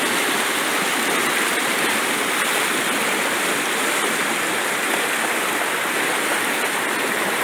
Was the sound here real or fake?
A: real